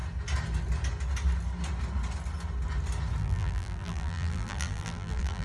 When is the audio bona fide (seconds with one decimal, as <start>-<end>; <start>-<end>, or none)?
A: 0.0-3.2